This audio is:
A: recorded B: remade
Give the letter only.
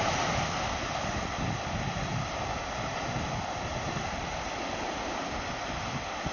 A